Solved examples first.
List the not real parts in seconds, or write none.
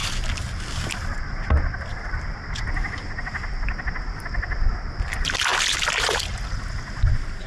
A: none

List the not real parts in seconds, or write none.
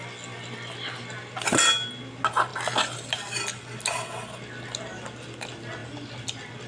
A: none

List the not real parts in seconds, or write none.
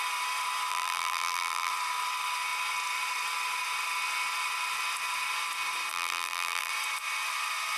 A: 0.7-1.7 (vocoder, BigVGAN v2); 5.9-6.7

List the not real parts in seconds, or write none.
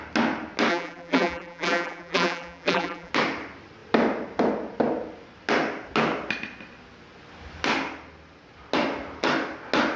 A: 0.7-3.1 (vocoder, BigVGAN v2)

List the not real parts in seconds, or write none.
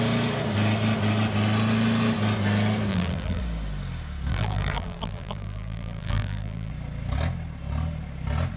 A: 2.9-3.4 (vocoder, BigVGAN v2); 4.3-6.7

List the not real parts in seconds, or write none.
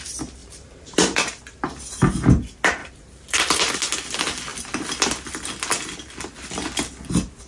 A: 0.4-1.8 (vocoder, BigVGAN v2); 2.8-3.7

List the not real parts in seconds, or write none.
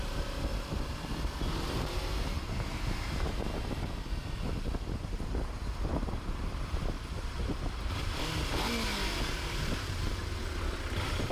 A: 0.5-3.9 (vocoder, BigVGAN v2); 5.9-8.2